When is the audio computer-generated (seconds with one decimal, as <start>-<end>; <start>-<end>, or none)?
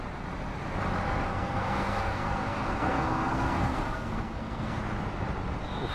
1.3-4.8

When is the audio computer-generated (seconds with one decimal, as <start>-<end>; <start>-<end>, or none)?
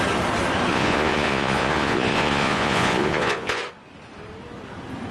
0.7-3.6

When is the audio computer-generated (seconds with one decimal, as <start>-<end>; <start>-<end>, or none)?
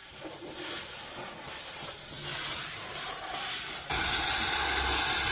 0.0-0.5; 2.3-3.2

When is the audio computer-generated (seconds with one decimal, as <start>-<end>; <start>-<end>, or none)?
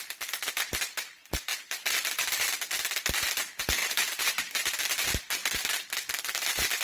3.8-4.8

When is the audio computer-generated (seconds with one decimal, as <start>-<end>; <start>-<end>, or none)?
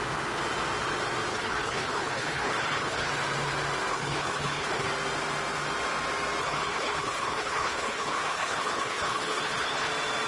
1.3-3.1; 3.9-4.9; 6.4-9.9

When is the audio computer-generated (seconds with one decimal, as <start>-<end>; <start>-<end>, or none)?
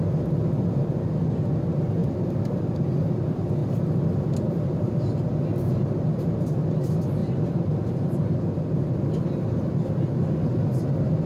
7.2-7.7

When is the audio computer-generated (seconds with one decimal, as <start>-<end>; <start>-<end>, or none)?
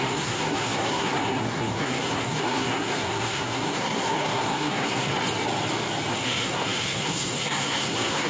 0.0-5.1; 6.1-8.3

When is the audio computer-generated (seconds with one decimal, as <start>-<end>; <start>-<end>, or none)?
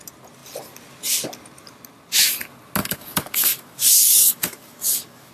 2.8-5.3